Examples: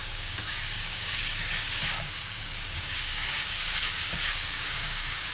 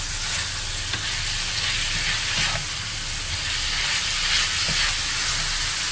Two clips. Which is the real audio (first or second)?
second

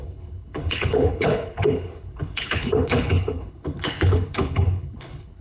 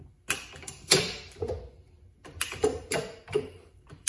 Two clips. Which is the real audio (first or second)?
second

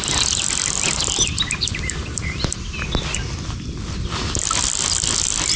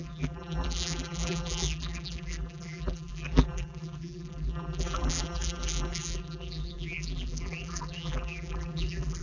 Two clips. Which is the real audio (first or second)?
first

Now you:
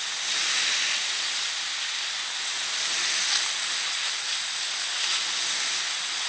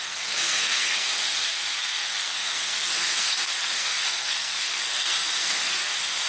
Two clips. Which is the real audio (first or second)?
first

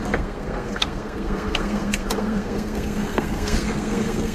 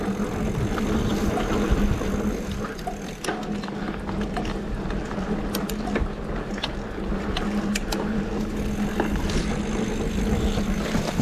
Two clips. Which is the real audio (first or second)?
second